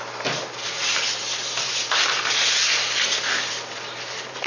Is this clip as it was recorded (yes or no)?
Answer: yes